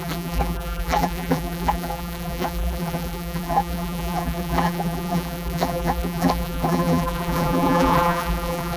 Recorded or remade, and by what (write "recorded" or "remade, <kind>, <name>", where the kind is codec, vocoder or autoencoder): remade, vocoder, BigVGAN v2